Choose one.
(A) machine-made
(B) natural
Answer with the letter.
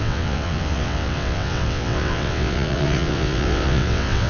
A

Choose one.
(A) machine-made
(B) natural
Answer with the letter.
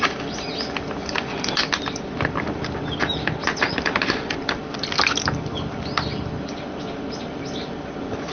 B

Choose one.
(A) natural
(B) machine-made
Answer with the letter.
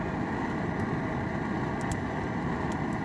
A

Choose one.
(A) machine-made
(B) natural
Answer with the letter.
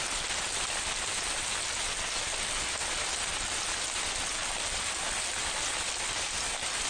B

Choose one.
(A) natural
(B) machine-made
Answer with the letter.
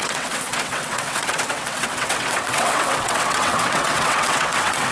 B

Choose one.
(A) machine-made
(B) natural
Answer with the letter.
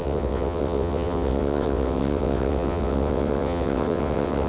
A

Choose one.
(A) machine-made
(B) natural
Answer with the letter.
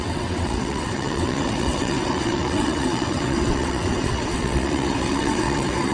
A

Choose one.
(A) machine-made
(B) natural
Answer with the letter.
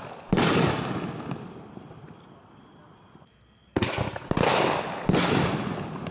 B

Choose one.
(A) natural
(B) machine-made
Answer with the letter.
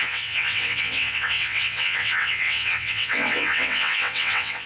B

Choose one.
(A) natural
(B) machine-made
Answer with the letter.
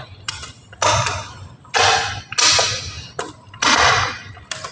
A